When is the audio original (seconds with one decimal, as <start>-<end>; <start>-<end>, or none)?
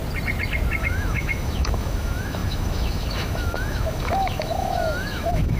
0.0-0.8